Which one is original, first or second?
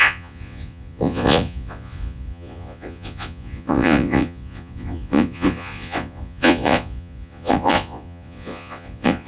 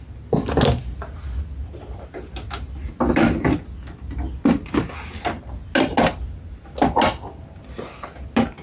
second